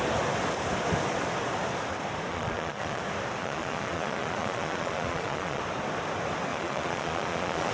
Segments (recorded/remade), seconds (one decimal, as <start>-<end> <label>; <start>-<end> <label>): 0.0-2.3 recorded; 2.3-3.0 remade; 3.0-3.4 recorded; 3.4-5.6 remade; 5.6-6.5 recorded; 6.5-7.7 remade